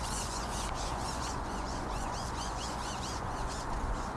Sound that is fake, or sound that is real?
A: fake